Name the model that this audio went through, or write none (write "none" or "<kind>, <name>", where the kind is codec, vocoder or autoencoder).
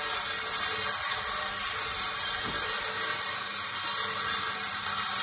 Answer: none